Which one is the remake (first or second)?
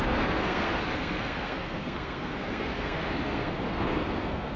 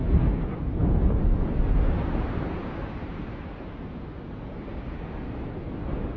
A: first